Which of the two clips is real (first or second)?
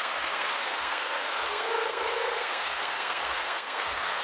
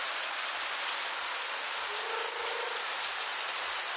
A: second